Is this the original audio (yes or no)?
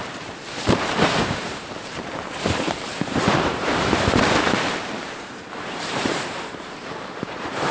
no